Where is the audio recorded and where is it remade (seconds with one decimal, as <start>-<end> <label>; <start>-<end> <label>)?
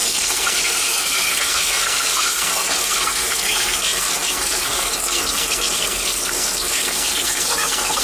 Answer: 0.0-8.0 remade